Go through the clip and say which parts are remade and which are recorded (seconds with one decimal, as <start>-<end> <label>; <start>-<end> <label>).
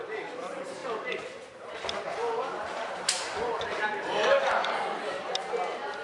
0.0-6.0 recorded